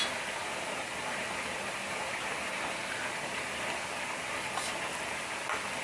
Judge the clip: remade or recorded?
recorded